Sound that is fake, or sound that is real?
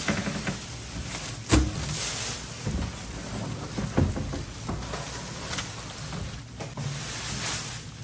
real